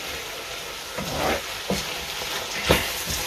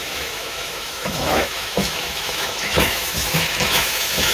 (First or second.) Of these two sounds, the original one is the first